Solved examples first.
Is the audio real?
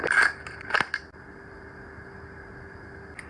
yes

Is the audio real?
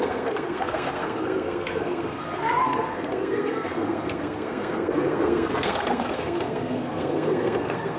no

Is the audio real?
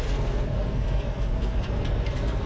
no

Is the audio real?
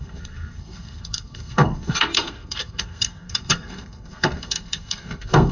no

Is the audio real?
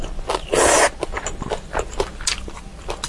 yes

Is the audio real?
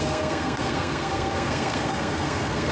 no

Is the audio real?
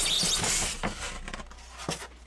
yes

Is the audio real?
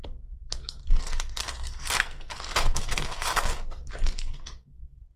no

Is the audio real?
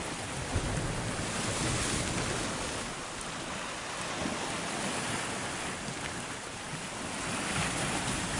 yes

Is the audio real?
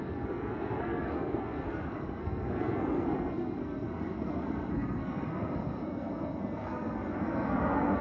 no